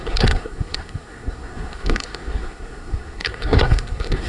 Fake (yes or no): yes